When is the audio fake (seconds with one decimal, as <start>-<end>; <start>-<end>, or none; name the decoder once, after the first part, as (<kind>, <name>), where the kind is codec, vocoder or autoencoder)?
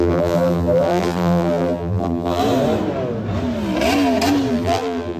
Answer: 0.0-2.4 (vocoder, BigVGAN v2); 4.5-5.2